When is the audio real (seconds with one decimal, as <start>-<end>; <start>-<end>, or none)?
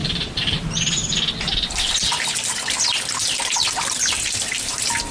1.0-4.1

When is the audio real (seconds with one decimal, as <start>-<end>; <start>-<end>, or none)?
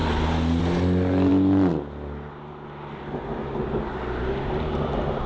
0.0-5.3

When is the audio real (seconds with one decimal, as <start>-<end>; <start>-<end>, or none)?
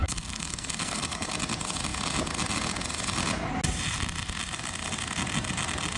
1.3-6.0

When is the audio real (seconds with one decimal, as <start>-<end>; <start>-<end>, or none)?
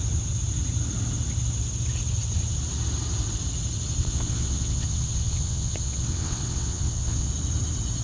0.0-4.0; 7.3-8.0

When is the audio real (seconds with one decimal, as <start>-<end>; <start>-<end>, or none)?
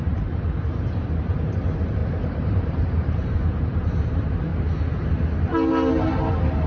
4.5-6.3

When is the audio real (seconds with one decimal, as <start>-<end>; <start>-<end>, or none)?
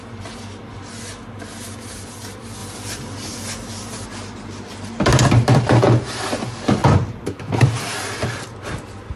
0.0-6.8; 7.5-9.2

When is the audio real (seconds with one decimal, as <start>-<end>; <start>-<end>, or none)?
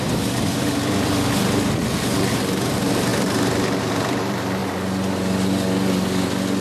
4.6-6.6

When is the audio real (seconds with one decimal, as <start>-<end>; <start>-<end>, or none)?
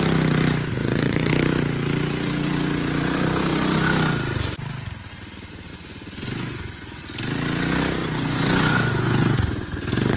0.0-0.8; 1.3-5.7; 7.0-8.0